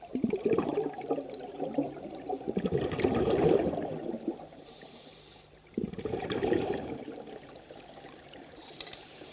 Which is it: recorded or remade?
remade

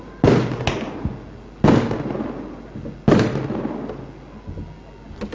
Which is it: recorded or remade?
recorded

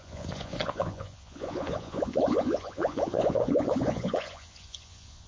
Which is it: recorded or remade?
remade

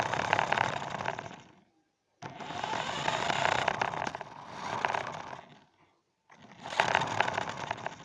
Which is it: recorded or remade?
recorded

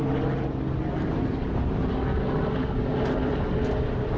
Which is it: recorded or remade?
recorded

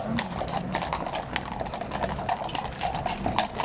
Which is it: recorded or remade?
recorded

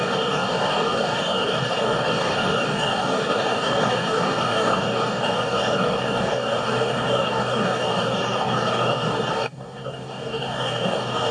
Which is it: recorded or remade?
remade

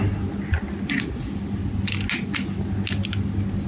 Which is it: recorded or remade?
recorded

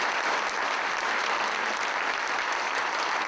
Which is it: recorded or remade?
recorded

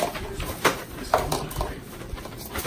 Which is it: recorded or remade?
remade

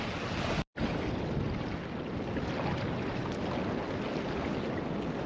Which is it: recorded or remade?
recorded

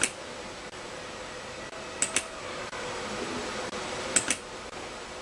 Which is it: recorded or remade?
recorded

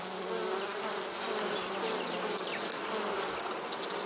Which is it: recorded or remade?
recorded